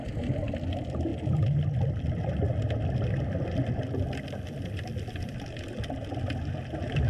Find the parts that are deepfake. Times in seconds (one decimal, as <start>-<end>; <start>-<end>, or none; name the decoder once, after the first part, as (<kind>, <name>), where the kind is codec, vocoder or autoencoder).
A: none